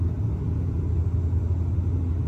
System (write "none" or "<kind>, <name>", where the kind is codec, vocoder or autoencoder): none